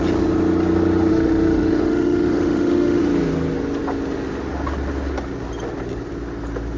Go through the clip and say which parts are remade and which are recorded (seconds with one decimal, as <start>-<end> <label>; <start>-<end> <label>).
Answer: 0.0-1.1 recorded; 1.1-3.0 remade; 3.0-6.8 recorded